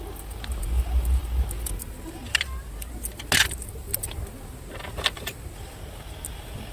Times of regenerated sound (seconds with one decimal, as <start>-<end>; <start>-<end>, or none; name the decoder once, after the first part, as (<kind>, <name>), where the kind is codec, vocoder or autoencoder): none